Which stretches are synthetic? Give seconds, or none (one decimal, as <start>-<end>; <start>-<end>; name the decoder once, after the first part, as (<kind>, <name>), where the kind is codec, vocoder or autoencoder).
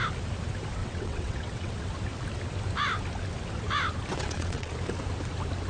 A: 0.8-1.7 (vocoder, WaveNeXt); 4.1-4.7